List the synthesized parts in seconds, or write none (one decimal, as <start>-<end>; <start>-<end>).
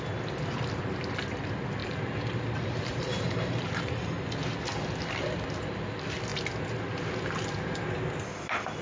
1.8-4.0